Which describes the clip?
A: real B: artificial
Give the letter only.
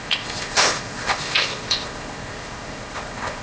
B